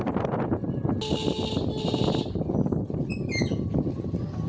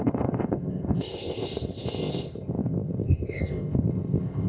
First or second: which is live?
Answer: first